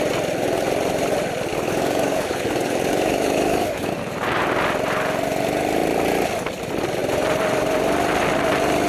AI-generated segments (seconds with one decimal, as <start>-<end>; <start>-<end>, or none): 1.5-3.9